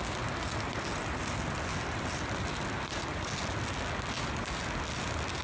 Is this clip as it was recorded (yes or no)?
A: yes